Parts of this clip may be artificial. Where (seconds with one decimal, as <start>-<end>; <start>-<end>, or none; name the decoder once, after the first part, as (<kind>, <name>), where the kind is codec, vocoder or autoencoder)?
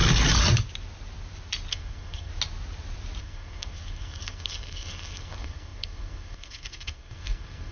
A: 1.7-2.3 (codec, SNAC); 3.2-7.7